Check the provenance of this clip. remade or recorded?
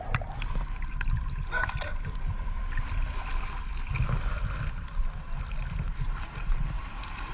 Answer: recorded